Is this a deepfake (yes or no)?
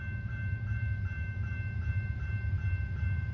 yes